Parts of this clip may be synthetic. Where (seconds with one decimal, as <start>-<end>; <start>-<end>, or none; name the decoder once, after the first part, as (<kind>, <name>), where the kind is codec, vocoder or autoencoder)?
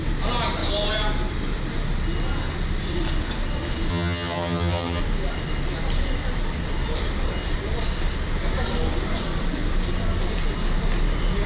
3.9-5.0 (vocoder, HiFi-GAN)